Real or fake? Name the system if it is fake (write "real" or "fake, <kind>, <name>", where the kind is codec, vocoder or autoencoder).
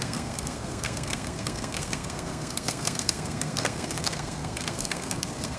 fake, codec, SNAC